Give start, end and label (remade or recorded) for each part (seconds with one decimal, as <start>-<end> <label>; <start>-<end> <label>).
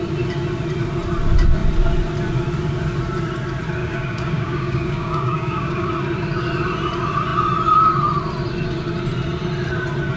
0.0-3.8 recorded; 3.8-5.9 remade; 5.9-10.2 recorded